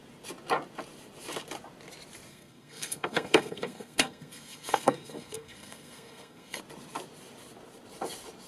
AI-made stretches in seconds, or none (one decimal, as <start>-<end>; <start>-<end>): 2.3-6.6